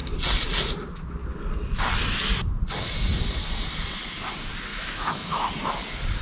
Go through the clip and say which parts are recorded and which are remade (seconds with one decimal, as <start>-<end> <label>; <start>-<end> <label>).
0.0-4.7 recorded; 4.7-5.5 remade; 5.5-6.2 recorded